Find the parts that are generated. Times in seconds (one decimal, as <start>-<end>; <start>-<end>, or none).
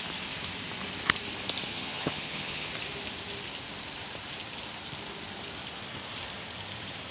1.7-2.7